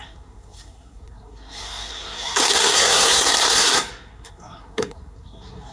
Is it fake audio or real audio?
fake